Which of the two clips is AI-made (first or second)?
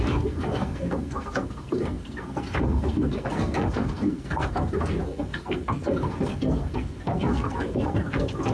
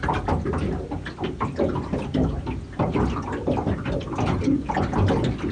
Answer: first